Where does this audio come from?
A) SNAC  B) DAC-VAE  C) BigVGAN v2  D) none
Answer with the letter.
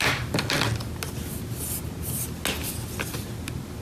D